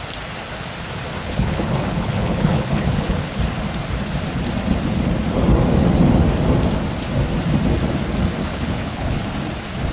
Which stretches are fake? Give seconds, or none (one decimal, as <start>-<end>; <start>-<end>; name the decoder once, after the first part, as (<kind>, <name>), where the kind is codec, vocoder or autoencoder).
1.2-3.4 (codec, HILCodec); 8.4-9.2